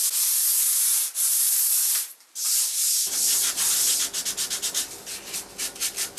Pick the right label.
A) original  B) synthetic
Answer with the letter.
A